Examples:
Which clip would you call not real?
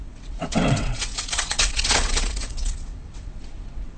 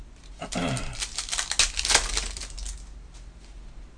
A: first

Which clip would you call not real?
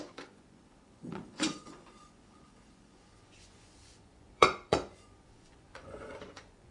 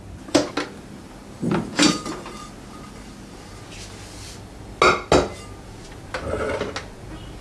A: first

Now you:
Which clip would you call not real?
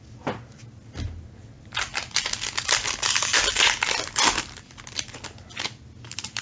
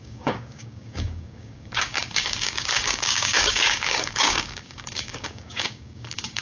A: second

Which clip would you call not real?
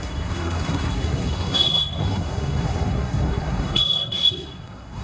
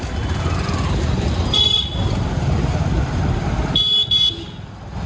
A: first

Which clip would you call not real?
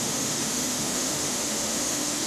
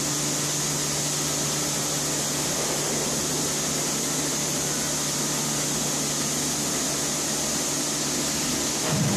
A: first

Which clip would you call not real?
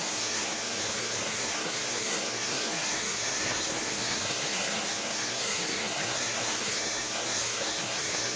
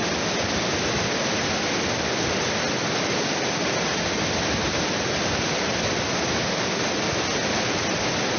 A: first